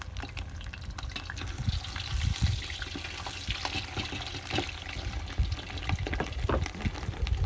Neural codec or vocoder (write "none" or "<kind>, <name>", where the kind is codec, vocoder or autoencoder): none